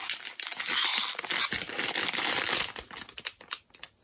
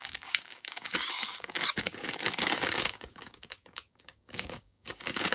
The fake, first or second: second